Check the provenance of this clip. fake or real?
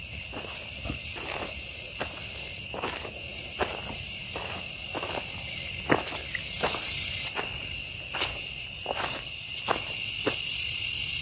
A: real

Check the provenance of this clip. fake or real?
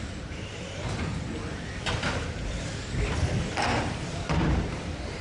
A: fake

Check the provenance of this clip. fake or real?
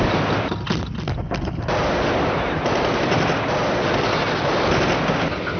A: real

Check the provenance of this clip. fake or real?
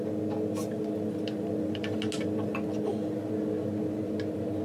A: real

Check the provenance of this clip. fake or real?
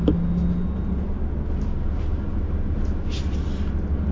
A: real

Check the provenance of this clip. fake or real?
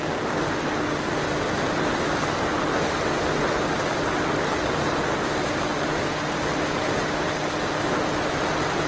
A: real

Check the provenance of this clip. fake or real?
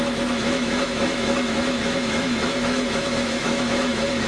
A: fake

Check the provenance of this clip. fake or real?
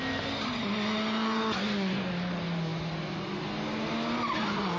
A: real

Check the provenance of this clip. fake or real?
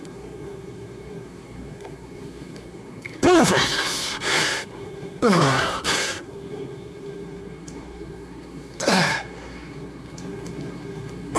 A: fake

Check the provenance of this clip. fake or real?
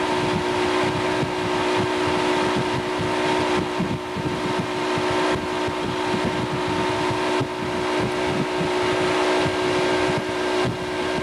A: real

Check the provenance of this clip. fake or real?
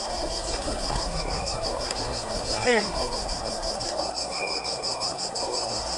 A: fake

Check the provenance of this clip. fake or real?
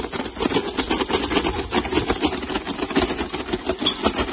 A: real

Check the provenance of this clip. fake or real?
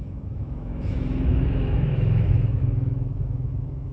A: fake